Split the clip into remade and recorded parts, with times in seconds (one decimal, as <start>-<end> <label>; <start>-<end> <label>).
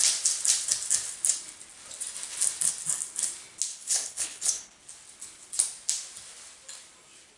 0.0-3.7 recorded; 3.7-4.8 remade; 4.8-7.4 recorded